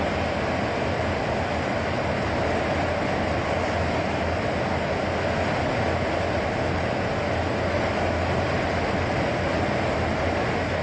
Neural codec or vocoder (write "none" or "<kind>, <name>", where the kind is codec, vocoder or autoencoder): none